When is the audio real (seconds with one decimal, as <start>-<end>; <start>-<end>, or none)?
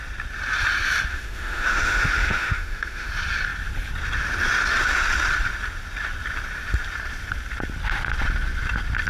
0.0-1.1; 3.1-9.1